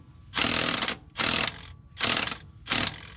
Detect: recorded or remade recorded